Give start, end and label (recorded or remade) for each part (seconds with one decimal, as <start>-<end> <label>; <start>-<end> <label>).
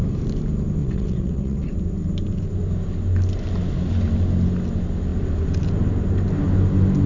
0.0-0.8 recorded; 0.8-1.7 remade; 1.7-7.1 recorded